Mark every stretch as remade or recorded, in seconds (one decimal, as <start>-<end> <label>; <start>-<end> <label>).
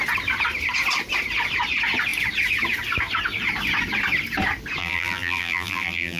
0.0-4.8 recorded; 4.8-6.2 remade